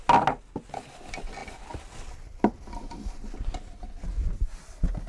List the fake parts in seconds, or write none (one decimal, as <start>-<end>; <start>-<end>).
none